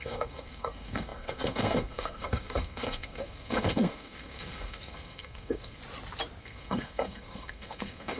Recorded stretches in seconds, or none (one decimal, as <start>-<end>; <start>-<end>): 5.8-6.4